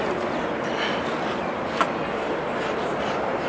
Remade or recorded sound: recorded